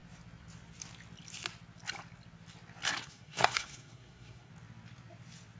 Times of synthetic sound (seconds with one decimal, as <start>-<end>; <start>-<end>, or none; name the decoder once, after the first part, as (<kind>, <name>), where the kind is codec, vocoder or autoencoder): 3.0-4.5 (codec, SNAC)